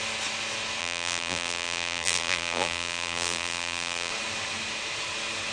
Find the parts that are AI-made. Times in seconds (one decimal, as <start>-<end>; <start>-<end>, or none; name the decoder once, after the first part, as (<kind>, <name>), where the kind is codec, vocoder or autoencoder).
0.8-4.1 (vocoder, BigVGAN v2)